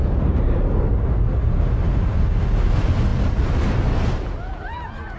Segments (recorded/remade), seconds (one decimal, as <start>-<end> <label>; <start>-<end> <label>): 0.0-5.2 recorded